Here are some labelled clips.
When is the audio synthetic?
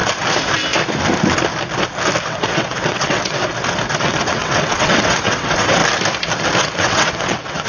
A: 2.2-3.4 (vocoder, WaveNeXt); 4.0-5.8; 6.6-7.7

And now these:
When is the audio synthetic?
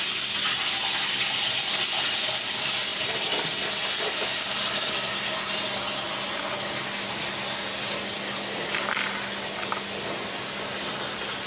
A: none